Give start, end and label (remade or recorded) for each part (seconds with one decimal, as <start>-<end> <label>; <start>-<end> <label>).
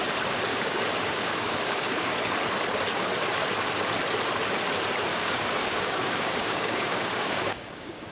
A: 0.0-0.5 recorded; 0.5-2.2 remade; 2.2-5.1 recorded; 5.1-8.1 remade